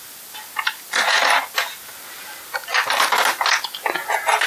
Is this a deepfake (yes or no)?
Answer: no